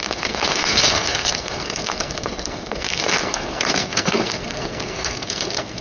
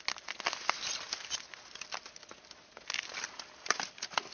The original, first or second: second